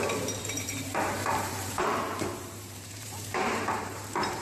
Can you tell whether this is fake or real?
fake